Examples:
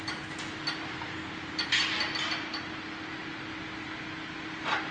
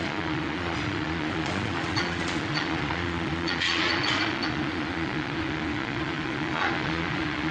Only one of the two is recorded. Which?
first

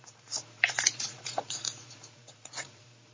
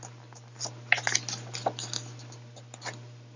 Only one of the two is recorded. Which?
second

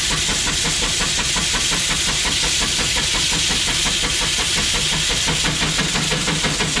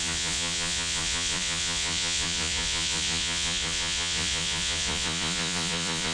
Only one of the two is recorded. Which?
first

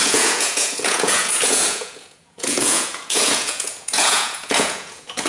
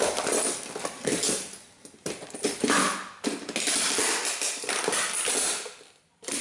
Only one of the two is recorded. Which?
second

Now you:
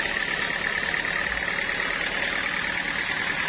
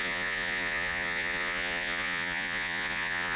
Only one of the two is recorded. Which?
first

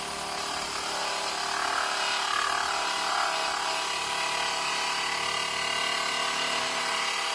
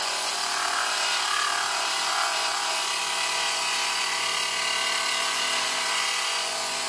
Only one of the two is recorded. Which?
first